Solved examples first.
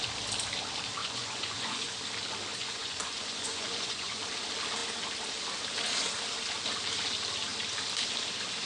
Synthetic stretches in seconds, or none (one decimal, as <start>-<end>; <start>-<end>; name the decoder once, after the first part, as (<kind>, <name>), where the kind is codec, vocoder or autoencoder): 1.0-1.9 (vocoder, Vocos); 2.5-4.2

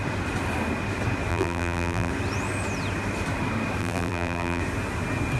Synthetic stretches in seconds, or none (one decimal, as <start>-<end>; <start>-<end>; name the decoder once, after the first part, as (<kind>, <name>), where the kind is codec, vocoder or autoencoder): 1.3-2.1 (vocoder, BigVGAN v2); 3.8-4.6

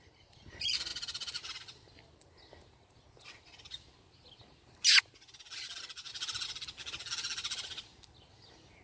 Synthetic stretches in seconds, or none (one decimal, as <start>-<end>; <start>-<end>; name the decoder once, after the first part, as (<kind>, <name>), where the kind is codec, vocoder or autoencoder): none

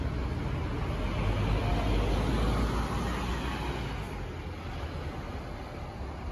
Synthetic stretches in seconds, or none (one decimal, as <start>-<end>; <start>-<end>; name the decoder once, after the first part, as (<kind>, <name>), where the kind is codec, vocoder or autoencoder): none

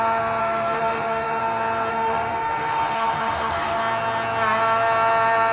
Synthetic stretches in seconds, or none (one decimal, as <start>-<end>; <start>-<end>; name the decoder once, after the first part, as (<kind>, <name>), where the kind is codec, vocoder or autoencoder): 0.4-1.4 (autoencoder, DAC-VAE); 1.9-3.8